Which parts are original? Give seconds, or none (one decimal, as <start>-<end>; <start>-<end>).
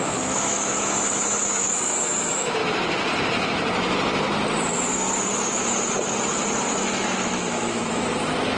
2.6-6.6